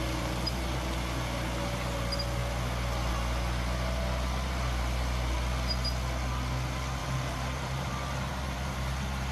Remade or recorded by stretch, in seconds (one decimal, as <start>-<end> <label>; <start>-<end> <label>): 0.0-7.0 recorded; 7.0-7.9 remade; 7.9-8.3 recorded; 8.3-9.3 remade